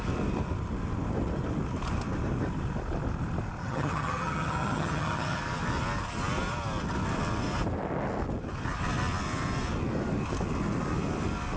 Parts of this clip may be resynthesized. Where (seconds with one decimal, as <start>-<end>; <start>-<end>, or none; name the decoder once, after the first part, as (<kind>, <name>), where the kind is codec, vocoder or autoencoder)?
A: 3.6-5.4 (vocoder, HiFi-GAN)